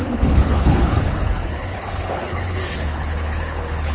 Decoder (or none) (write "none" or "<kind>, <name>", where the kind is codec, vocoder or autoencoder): codec, HILCodec